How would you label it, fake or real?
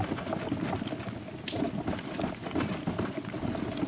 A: real